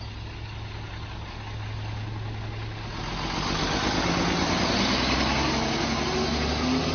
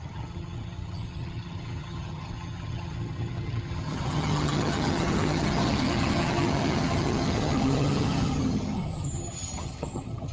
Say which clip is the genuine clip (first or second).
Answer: first